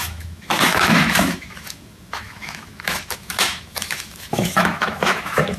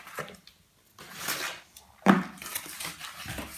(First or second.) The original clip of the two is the second